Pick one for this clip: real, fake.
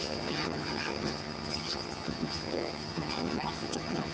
fake